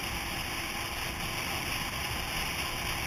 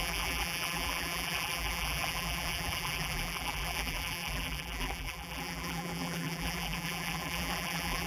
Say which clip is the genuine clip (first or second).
first